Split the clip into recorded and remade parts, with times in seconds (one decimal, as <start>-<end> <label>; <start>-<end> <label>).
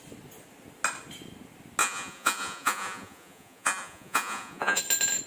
0.0-1.8 recorded; 1.8-4.8 remade; 4.8-5.3 recorded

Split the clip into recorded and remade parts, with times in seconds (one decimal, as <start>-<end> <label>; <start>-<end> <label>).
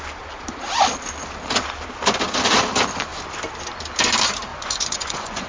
0.0-4.5 recorded; 4.5-5.5 remade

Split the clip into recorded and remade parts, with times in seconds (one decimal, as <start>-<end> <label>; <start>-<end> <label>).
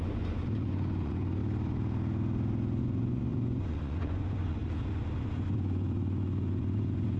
0.0-1.4 remade; 1.4-2.8 recorded; 2.8-4.6 remade; 4.6-5.3 recorded; 5.3-7.2 remade